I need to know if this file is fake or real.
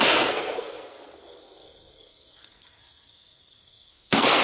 fake